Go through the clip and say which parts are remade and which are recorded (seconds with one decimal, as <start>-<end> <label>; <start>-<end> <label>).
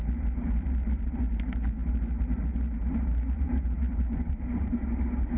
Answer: 0.0-5.4 remade